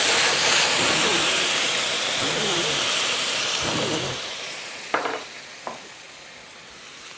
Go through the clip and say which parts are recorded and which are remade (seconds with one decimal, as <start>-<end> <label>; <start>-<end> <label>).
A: 0.0-1.1 recorded; 1.1-5.4 remade; 5.4-7.2 recorded